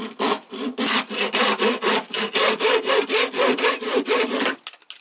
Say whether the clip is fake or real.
real